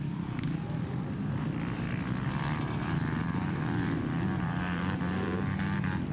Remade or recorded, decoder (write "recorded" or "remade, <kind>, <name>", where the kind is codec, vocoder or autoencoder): recorded